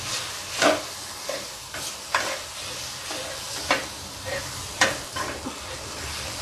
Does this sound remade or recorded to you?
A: recorded